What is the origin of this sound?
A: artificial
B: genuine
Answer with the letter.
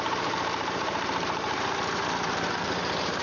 A